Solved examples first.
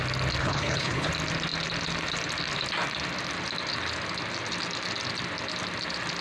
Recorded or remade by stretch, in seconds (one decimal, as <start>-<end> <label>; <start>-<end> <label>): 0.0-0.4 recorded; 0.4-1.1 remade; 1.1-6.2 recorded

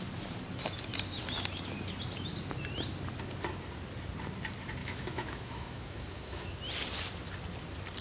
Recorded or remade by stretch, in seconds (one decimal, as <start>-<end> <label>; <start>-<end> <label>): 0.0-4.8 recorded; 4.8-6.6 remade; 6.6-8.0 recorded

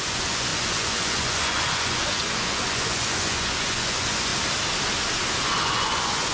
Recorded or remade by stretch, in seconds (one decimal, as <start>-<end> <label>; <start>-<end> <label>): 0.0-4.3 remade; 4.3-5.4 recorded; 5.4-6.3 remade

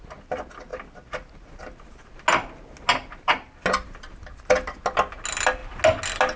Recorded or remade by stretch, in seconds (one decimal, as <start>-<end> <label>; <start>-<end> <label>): 0.0-6.4 recorded

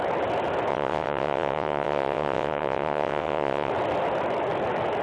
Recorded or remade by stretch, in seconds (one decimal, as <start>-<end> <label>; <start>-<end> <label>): 0.0-0.7 recorded; 0.7-3.7 remade; 3.7-5.0 recorded

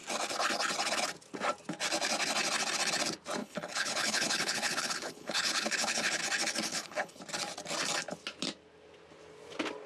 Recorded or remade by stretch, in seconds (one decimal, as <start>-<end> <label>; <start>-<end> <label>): 0.0-3.4 recorded; 3.4-6.2 remade; 6.2-6.7 recorded; 6.7-7.2 remade; 7.2-9.9 recorded